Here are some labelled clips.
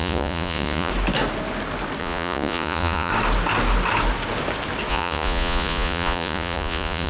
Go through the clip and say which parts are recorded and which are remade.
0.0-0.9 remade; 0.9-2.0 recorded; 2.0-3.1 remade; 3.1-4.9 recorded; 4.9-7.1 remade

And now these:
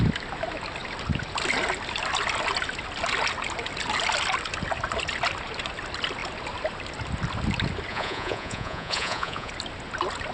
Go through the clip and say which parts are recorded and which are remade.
0.0-7.9 recorded; 7.9-9.5 remade; 9.5-10.3 recorded

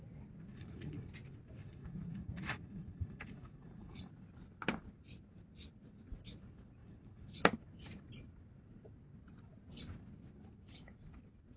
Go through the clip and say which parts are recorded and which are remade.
0.0-0.5 recorded; 0.5-1.1 remade; 1.1-1.6 recorded; 1.6-4.1 remade; 4.1-6.8 recorded; 6.8-7.4 remade; 7.4-11.6 recorded